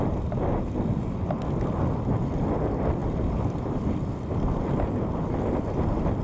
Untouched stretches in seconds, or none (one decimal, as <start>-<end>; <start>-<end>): 0.0-3.0; 5.5-6.2